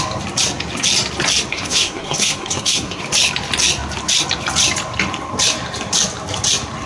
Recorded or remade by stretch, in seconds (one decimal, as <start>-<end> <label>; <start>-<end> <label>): 0.0-1.5 recorded; 1.5-3.0 remade; 3.0-6.9 recorded